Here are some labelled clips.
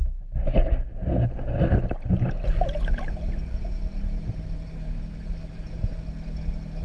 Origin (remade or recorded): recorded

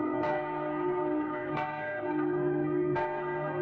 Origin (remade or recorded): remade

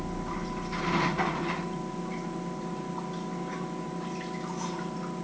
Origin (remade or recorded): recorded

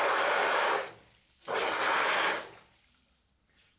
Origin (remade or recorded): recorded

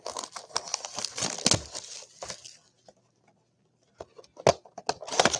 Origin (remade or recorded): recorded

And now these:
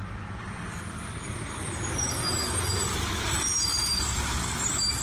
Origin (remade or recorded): recorded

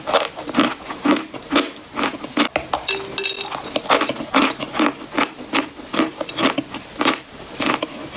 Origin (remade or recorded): recorded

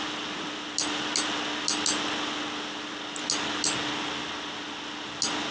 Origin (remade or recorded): recorded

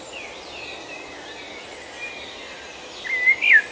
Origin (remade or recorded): recorded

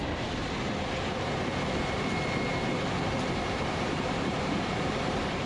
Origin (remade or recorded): remade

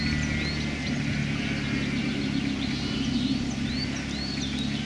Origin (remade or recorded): recorded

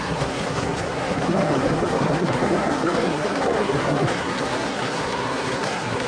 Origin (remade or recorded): remade